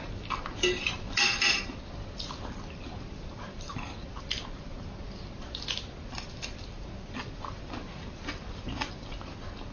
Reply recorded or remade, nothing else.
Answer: remade